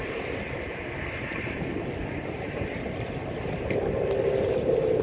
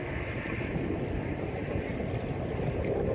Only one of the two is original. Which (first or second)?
second